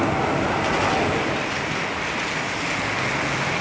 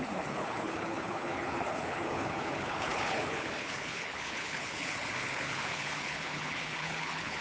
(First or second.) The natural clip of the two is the first